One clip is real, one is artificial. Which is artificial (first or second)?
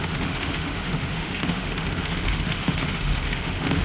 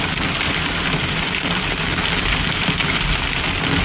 first